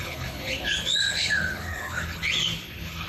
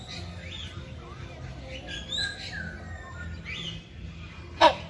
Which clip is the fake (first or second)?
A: first